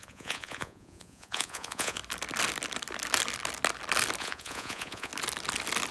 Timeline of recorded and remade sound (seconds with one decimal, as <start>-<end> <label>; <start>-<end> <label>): 0.0-2.0 remade; 2.0-4.2 recorded; 4.2-5.1 remade; 5.1-5.9 recorded